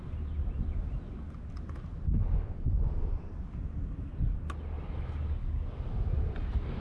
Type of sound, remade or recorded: recorded